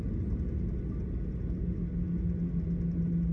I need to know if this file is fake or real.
real